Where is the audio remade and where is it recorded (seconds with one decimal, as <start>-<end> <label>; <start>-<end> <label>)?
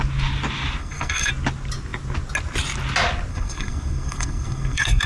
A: 0.0-0.8 recorded; 0.8-1.3 remade; 1.3-3.3 recorded; 3.3-5.1 remade